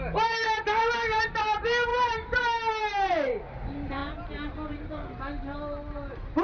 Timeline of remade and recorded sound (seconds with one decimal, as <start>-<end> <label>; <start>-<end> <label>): 0.0-6.4 recorded